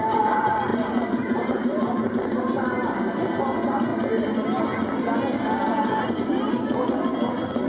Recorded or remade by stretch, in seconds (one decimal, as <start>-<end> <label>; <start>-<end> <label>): 0.0-0.7 recorded; 0.7-3.4 remade; 3.4-7.7 recorded